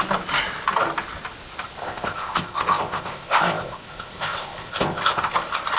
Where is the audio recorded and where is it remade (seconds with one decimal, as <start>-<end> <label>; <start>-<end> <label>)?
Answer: 0.0-1.8 recorded; 1.8-5.3 remade; 5.3-5.8 recorded